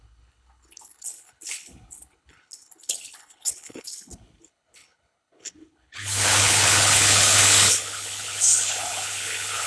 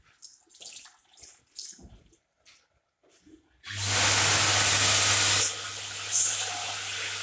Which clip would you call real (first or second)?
second